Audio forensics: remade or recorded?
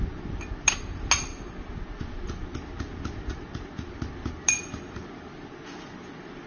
recorded